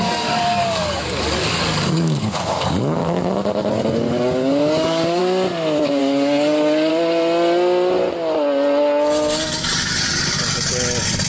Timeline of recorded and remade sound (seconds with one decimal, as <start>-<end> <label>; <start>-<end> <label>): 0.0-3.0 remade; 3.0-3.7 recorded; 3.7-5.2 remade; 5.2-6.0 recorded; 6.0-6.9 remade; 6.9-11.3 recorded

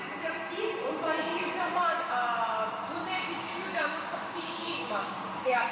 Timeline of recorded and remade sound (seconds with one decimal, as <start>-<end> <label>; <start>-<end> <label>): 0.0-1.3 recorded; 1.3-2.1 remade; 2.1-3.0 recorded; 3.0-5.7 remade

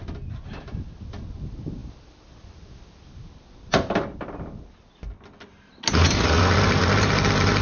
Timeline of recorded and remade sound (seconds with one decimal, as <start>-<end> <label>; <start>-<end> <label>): 0.0-7.6 recorded